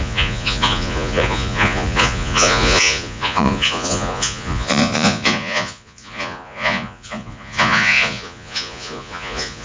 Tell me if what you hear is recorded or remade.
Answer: remade